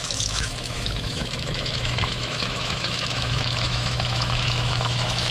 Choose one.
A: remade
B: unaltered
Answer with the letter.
A